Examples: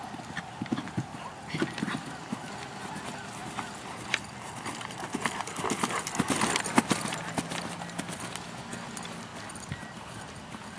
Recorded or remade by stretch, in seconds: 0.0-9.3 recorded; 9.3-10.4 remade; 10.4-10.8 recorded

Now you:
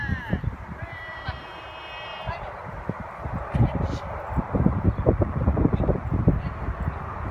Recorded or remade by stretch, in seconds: 0.0-7.3 remade

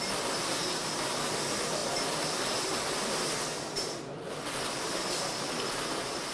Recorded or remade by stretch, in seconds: 0.0-6.3 recorded